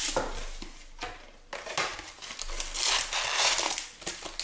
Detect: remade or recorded recorded